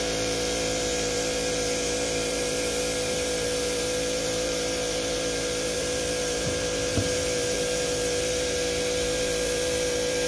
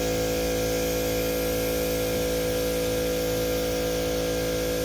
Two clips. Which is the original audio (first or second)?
second